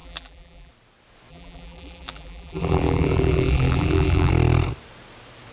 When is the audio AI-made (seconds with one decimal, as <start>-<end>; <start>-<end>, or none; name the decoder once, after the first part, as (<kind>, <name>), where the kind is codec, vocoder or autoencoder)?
0.0-0.7 (vocoder, BigVGAN v2); 1.3-4.3